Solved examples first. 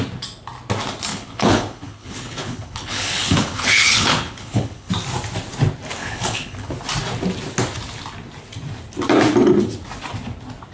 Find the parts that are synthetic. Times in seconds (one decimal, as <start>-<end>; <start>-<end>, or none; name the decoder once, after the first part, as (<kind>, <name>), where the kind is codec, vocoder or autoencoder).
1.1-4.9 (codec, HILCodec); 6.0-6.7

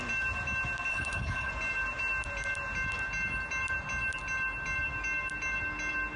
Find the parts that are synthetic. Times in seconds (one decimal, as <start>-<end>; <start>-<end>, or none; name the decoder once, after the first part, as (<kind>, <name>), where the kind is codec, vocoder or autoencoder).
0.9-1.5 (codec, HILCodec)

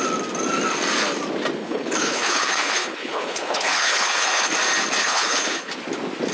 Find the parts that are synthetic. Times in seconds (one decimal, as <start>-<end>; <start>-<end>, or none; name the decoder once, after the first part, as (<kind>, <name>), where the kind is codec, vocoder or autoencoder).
1.6-4.5 (codec, HILCodec); 5.0-5.7